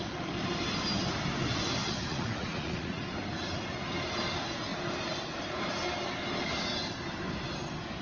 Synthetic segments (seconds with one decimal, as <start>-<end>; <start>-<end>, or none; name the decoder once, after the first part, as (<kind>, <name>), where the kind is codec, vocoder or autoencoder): 1.8-3.0 (vocoder, Vocos)